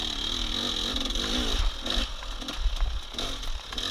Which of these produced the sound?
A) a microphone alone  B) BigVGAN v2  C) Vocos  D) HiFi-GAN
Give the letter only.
A